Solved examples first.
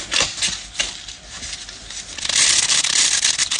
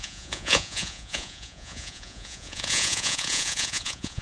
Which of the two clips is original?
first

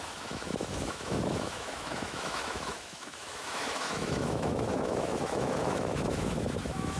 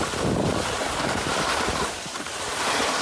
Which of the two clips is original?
second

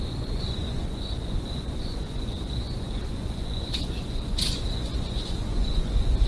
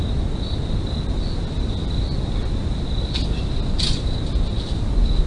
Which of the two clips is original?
second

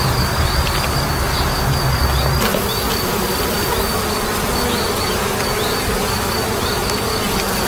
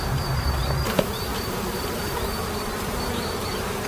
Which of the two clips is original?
first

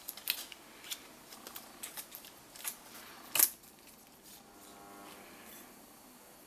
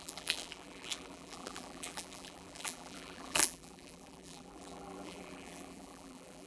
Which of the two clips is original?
first